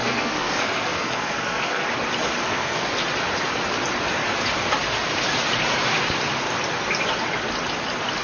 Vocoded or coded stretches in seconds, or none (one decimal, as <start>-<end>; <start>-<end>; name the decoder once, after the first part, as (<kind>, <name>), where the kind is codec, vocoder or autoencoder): 0.0-1.9 (codec, SNAC); 2.4-2.9

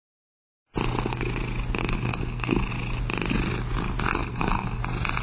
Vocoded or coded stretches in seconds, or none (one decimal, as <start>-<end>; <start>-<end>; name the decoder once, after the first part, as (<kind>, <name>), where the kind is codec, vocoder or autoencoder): 1.8-2.7 (codec, SNAC); 4.1-4.8

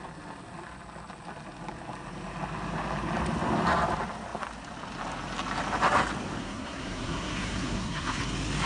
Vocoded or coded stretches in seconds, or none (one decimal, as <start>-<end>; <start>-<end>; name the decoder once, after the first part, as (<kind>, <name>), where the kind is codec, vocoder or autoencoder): 6.4-8.2 (codec, SNAC)

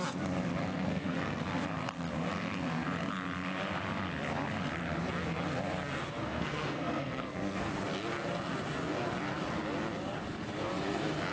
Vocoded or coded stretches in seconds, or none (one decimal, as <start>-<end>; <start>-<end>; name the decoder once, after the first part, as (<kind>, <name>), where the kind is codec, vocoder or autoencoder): 0.6-1.5 (codec, SNAC); 6.2-7.7

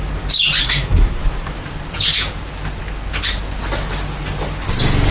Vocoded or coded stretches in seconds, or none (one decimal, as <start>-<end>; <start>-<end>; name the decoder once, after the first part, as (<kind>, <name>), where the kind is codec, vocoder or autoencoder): 0.6-1.2 (codec, SNAC)

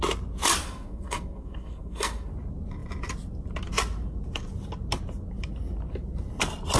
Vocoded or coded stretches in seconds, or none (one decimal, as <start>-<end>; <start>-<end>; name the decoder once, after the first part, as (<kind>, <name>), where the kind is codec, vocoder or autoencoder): 0.6-2.3 (codec, SNAC)

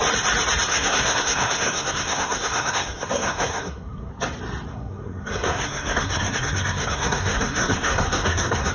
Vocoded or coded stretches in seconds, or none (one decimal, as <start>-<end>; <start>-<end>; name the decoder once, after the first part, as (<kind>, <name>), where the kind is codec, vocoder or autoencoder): 0.7-4.1 (codec, SNAC); 4.7-8.7